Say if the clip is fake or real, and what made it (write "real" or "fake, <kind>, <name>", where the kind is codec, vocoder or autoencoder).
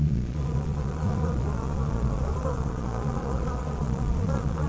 fake, vocoder, Vocos